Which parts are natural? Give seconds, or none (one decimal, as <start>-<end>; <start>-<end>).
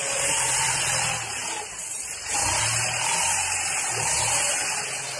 0.0-5.2